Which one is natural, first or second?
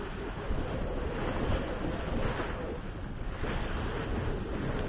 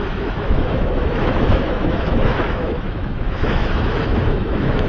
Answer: first